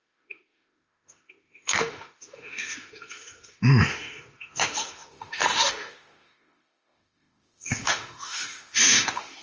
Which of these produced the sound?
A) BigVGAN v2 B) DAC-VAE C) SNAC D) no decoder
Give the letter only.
B